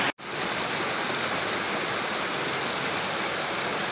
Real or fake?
real